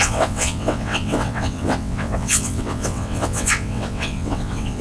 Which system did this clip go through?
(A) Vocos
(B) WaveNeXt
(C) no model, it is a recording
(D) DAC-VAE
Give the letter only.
B